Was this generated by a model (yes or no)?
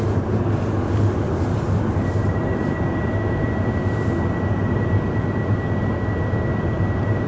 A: no